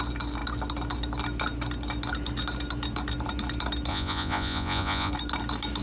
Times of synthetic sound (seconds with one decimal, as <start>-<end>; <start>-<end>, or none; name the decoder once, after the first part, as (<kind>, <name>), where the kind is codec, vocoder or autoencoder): 3.9-5.1 (vocoder, Vocos)

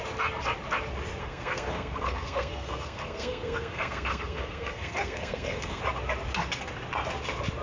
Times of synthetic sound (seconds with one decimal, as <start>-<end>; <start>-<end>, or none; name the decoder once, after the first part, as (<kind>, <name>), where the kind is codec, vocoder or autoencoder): 1.2-5.8 (codec, SNAC)

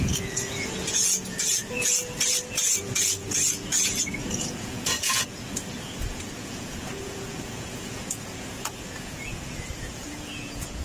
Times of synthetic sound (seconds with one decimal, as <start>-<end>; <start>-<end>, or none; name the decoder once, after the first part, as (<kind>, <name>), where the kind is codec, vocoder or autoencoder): 0.0-10.8 (vocoder, Vocos)

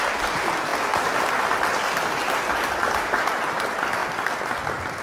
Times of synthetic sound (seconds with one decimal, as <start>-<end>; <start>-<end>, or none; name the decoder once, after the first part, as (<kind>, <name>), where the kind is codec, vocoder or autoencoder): 0.0-0.7 (vocoder, BigVGAN v2); 2.9-4.0